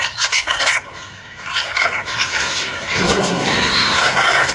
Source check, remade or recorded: remade